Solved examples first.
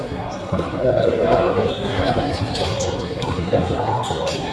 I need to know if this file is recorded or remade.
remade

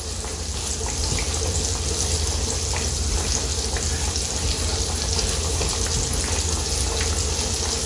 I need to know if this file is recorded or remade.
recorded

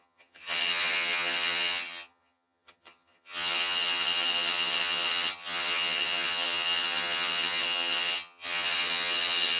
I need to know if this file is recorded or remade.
remade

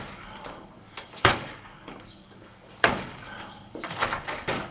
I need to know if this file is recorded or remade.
remade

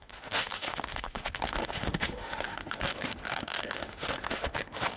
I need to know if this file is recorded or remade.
remade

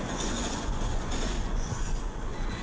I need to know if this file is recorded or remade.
remade